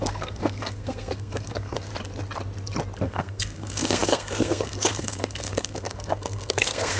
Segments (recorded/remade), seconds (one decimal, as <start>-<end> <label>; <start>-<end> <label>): 0.0-1.9 remade; 1.9-3.0 recorded; 3.0-7.0 remade